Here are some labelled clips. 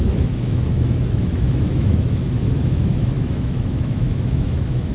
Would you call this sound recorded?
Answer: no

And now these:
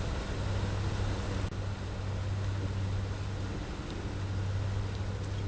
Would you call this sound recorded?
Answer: yes